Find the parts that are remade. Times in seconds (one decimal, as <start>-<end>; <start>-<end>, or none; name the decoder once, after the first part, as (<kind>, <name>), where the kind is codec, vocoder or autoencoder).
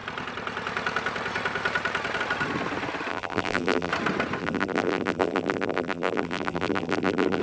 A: 3.1-3.9 (vocoder, BigVGAN v2); 4.4-7.4